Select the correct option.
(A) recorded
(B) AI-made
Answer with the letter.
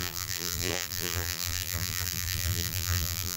B